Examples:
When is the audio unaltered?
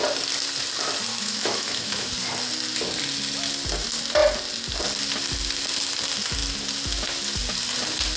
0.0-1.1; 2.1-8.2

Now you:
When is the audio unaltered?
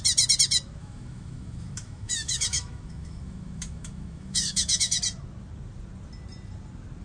0.0-0.8; 5.0-7.0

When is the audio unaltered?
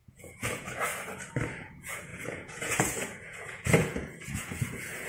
0.9-1.6